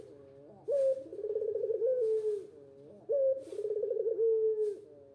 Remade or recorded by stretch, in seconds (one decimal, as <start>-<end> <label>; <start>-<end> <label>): 0.0-5.1 recorded